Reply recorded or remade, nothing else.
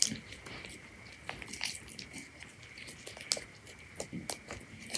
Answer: recorded